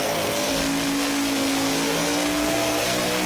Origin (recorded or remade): remade